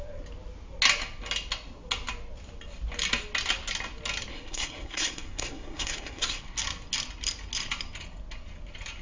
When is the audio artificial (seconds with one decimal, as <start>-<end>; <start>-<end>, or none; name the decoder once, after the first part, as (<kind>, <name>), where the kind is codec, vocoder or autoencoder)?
4.3-6.4 (codec, SNAC)